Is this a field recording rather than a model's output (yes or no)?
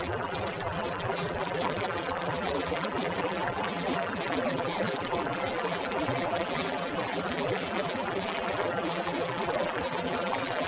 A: no